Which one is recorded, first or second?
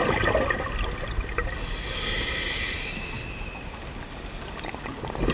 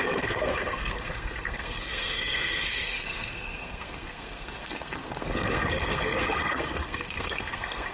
first